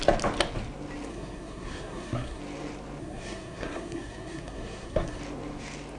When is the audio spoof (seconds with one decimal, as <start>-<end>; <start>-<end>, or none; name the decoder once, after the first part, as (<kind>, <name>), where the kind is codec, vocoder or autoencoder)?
1.1-2.4 (codec, SNAC); 3.0-5.2